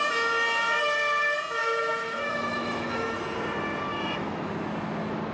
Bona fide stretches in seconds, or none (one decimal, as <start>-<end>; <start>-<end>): 0.0-1.6; 3.2-3.9; 4.5-5.3